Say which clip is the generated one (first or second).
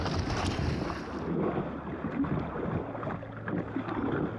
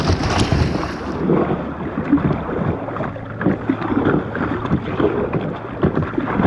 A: second